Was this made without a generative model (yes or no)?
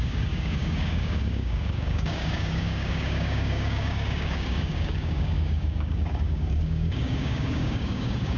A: no